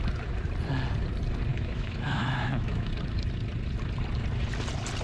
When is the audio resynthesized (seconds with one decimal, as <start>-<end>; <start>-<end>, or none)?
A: 1.5-2.9